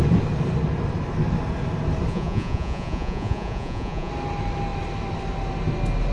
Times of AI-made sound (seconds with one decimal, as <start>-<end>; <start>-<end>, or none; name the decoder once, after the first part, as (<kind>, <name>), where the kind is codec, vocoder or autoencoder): 2.1-4.1 (vocoder, Vocos)